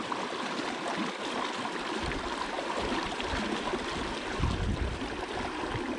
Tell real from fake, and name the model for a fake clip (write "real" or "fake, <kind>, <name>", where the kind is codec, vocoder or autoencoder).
real